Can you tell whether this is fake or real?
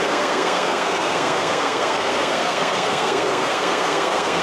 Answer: fake